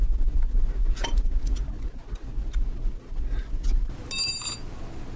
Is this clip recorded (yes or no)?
yes